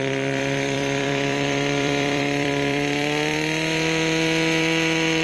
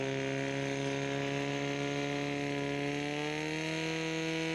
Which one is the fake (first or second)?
first